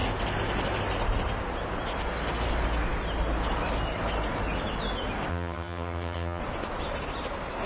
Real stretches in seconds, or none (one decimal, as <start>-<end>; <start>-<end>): 0.0-5.3; 6.4-7.7